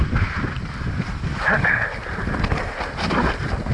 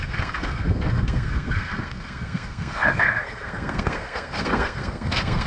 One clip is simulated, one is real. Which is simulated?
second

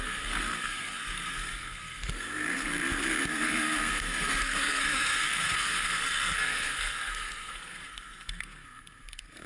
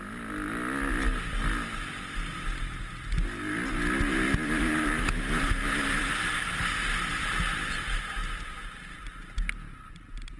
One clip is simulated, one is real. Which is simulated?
first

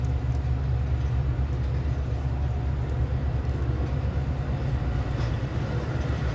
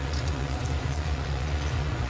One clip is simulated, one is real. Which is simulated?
second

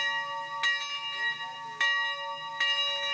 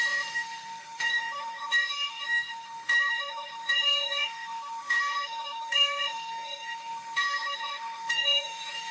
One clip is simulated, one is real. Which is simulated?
second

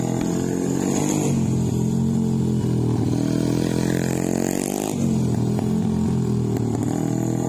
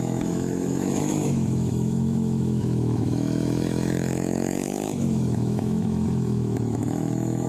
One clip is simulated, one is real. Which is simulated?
second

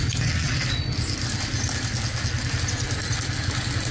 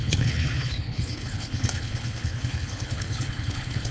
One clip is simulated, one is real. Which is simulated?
second